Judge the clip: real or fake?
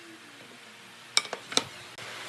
real